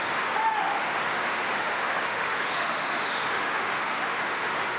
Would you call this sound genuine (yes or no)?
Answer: no